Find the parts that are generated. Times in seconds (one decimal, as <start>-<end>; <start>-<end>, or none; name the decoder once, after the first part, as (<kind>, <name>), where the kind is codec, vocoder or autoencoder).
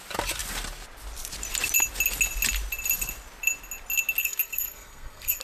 4.2-5.4 (codec, SNAC)